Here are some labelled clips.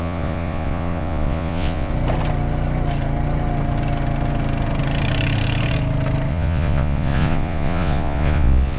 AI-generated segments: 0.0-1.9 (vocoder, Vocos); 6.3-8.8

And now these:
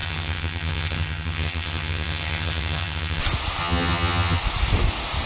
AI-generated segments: 0.0-3.2 (vocoder, HiFi-GAN); 3.6-4.4

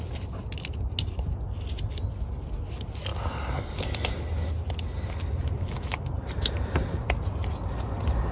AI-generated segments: none